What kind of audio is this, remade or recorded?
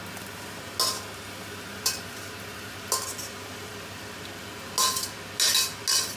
recorded